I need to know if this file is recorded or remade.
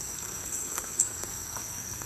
remade